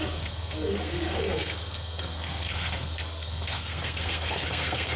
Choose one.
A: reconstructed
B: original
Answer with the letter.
A